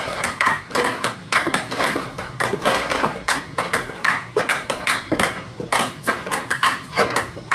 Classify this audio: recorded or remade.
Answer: remade